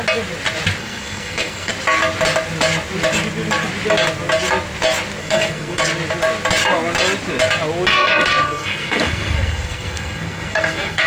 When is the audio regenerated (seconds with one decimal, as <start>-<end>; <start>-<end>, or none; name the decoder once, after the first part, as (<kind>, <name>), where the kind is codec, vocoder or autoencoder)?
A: 0.8-1.7 (codec, SNAC); 5.2-5.8; 7.9-11.1